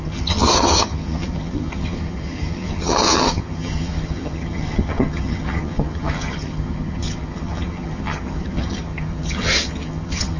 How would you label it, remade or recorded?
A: remade